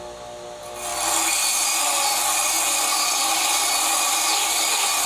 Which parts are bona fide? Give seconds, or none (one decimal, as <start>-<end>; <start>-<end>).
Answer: 0.0-5.1